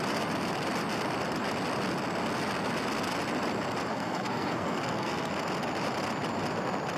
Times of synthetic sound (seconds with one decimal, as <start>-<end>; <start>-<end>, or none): 3.9-5.3